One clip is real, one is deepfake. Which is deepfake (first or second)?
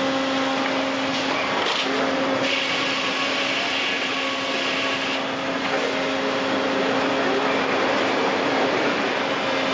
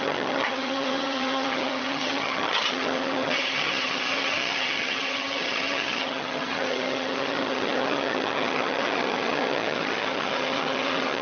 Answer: second